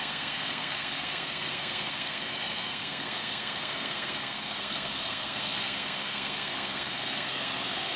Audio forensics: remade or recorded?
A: remade